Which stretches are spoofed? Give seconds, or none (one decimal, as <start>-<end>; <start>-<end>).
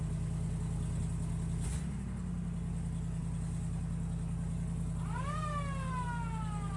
none